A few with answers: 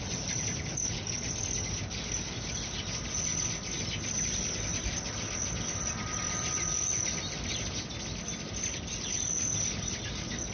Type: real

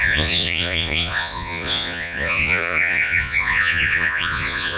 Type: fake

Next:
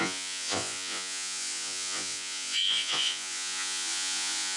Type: fake